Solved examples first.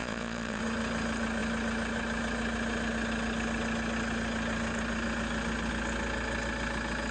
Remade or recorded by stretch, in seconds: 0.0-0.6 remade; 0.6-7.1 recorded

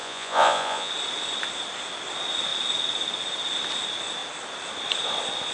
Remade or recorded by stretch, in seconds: 0.0-0.9 remade; 0.9-5.5 recorded